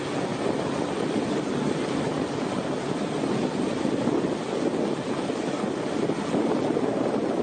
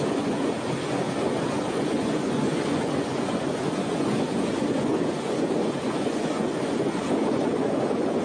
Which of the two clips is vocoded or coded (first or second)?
second